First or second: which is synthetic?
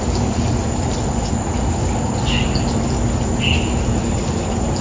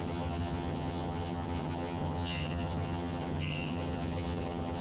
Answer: second